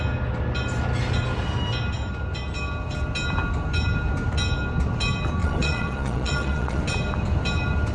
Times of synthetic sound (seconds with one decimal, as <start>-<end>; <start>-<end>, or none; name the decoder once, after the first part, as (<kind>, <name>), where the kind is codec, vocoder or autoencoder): 5.4-6.8 (vocoder, Vocos)